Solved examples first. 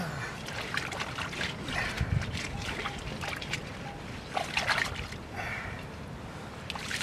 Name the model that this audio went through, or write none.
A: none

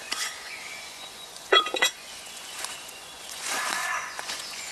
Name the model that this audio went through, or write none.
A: vocoder, Vocos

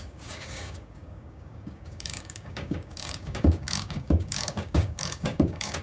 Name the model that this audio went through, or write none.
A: codec, DAC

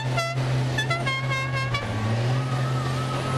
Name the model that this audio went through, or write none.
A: none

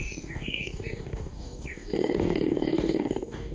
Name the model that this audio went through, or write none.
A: codec, DAC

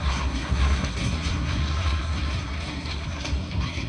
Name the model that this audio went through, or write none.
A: codec, SNAC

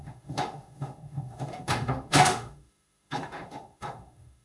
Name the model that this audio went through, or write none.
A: autoencoder, DAC-VAE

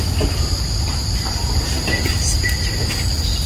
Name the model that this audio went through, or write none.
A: vocoder, BigVGAN v2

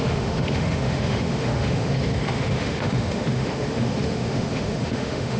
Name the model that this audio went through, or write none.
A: autoencoder, DAC-VAE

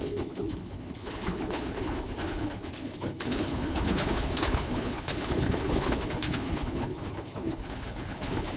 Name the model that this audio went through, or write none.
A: codec, HILCodec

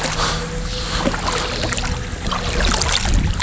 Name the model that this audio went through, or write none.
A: none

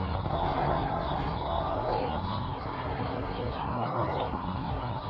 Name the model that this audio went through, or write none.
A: codec, SNAC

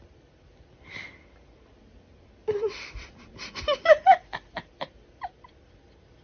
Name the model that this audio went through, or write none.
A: vocoder, BigVGAN v2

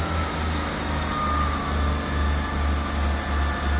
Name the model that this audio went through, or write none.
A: none